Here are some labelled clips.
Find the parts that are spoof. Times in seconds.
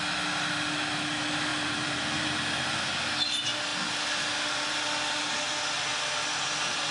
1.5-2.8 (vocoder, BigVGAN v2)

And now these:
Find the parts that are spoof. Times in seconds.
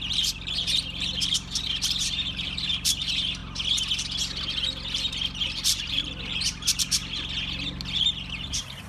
0.0-3.4 (vocoder, BigVGAN v2); 5.4-7.0; 8.0-8.9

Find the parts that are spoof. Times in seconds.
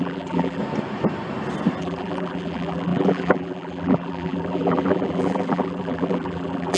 0.0-0.6 (vocoder, BigVGAN v2); 1.8-6.8